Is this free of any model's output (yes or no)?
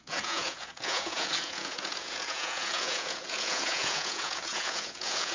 no